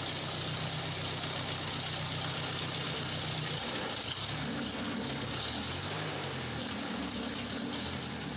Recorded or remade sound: recorded